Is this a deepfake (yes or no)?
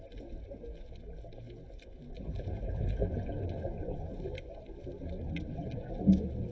no